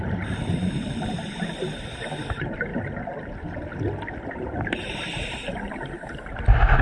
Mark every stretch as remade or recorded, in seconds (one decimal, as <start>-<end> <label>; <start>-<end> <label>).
0.0-2.7 remade; 2.7-4.4 recorded; 4.4-6.8 remade